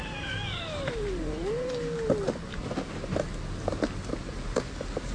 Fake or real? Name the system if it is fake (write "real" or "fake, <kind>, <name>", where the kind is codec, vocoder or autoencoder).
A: real